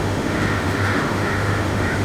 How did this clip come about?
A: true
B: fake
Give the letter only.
B